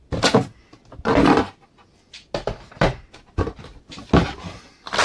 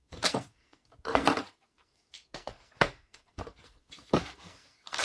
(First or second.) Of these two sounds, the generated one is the second